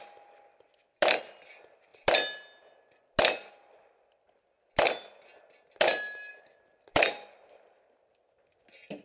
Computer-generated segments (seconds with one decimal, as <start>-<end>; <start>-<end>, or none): none